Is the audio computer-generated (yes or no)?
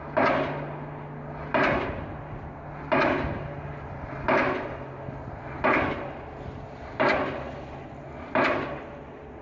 no